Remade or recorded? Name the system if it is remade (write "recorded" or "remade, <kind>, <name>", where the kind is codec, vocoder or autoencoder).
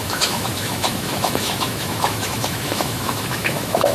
remade, autoencoder, DAC-VAE